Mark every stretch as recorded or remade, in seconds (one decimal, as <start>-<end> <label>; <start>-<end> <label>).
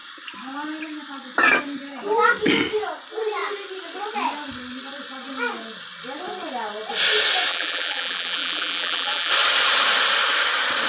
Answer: 0.0-7.5 recorded; 7.5-9.3 remade; 9.3-10.9 recorded